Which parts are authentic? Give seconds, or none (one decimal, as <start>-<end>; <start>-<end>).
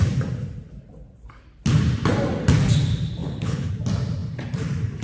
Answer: 0.0-3.2; 3.7-5.0